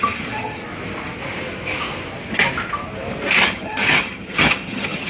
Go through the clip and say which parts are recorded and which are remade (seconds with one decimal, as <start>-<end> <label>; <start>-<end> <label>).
0.0-0.6 remade; 0.6-3.4 recorded; 3.4-5.1 remade